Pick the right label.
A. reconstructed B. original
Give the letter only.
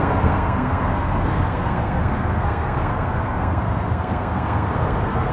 A